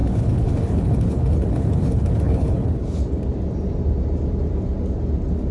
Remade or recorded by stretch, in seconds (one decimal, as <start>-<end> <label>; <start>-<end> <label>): 0.0-3.0 remade; 3.0-5.5 recorded